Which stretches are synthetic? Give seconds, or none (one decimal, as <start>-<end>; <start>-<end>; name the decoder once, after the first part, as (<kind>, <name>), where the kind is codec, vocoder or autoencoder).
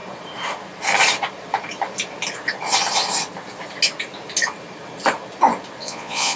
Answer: 5.8-6.4 (vocoder, Vocos)